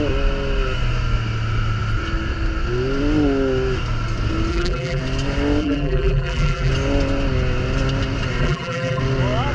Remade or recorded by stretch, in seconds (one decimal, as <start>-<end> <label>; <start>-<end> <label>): 0.0-4.5 recorded; 4.5-5.0 remade; 5.0-5.6 recorded; 5.6-6.7 remade; 6.7-8.4 recorded; 8.4-9.0 remade; 9.0-9.5 recorded